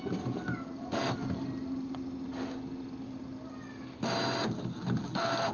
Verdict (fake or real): real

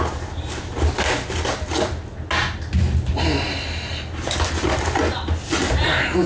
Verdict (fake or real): real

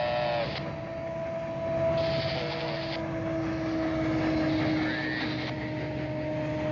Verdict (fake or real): real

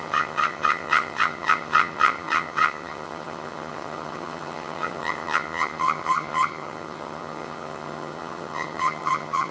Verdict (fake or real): fake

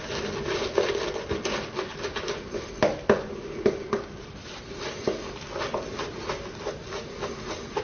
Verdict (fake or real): real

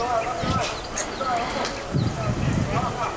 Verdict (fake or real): real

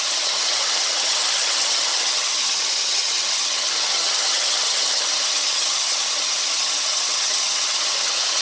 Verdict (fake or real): fake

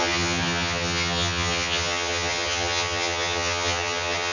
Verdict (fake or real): fake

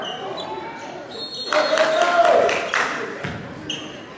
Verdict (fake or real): real